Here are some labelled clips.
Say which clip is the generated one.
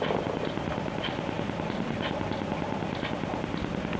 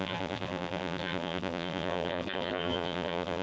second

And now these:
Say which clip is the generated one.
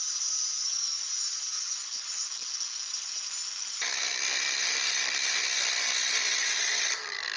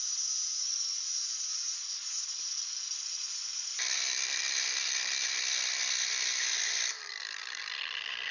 second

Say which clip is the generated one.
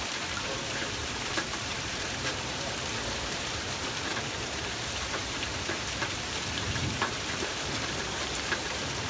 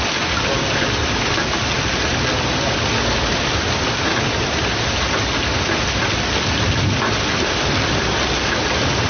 first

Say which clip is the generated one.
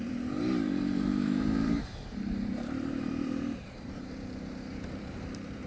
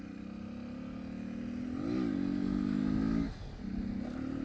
first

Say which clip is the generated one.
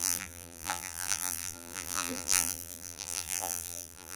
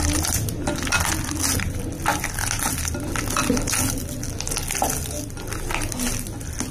first